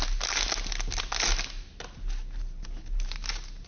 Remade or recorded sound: recorded